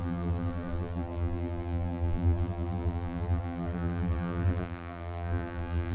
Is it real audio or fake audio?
fake